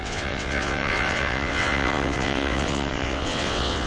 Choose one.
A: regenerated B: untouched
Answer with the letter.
A